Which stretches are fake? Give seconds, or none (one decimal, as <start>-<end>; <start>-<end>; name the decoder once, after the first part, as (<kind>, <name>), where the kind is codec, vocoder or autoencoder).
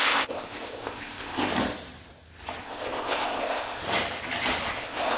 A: 0.0-1.5 (codec, ZipCodec); 2.6-3.8; 4.7-5.2